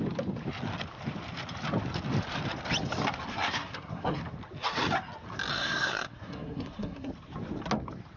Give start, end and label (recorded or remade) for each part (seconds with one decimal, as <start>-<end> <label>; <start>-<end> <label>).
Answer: 0.0-3.3 recorded; 3.3-4.2 remade; 4.2-5.5 recorded; 5.5-7.1 remade; 7.1-8.2 recorded